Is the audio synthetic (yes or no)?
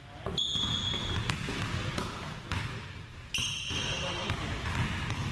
no